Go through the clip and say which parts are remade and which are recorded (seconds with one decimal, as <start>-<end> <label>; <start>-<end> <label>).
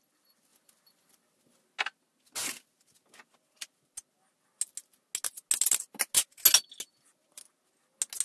0.0-8.2 recorded